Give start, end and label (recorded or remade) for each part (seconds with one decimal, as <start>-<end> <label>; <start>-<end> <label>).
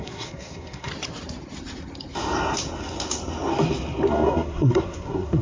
0.0-0.9 remade; 0.9-4.1 recorded; 4.1-5.4 remade